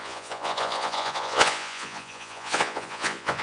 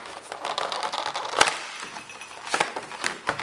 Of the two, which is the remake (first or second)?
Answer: first